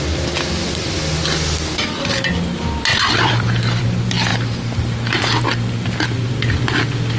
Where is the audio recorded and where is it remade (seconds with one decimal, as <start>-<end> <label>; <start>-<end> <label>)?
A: 0.0-2.9 recorded; 2.9-3.8 remade; 3.8-7.2 recorded